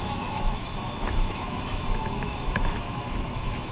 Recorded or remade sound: remade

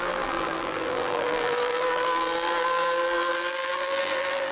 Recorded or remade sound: remade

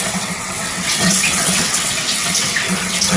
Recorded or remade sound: remade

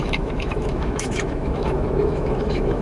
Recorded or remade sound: remade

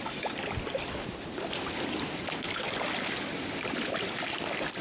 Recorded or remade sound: recorded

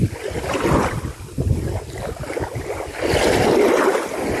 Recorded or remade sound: recorded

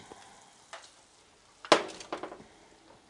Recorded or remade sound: recorded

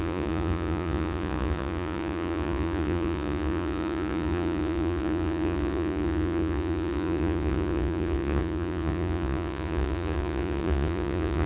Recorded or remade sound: remade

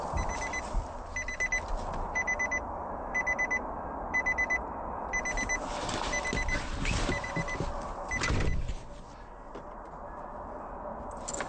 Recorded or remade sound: recorded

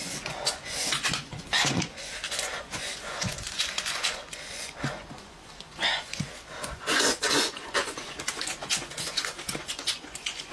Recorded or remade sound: remade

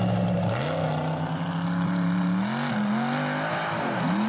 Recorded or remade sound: recorded